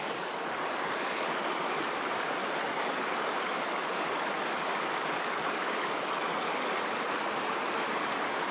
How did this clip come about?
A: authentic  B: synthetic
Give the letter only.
A